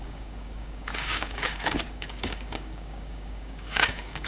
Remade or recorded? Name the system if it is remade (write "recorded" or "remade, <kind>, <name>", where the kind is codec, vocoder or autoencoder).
remade, codec, DAC